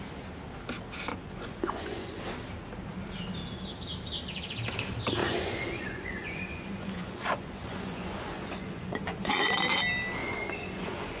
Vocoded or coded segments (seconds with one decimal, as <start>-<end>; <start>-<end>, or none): 1.1-2.2; 5.2-9.5; 10.2-11.2